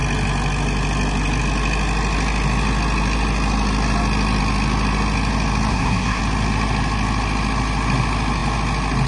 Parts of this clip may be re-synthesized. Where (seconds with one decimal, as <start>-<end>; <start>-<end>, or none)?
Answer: 5.7-6.2